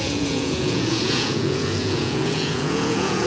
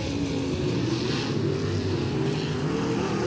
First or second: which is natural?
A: second